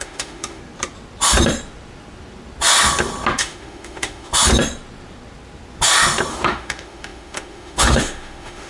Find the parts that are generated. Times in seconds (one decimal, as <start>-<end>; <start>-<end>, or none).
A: 0.0-0.6; 3.4-4.3; 6.3-8.7